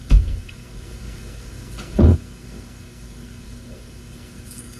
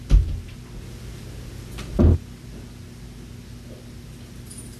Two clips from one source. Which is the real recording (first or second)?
second